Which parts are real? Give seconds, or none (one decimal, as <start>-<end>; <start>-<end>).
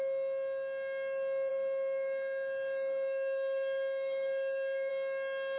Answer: 0.0-1.5; 4.9-5.6